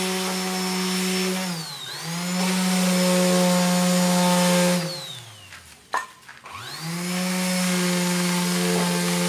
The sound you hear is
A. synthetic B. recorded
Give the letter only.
B